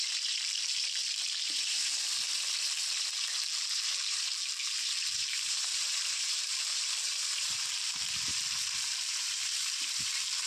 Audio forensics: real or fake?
fake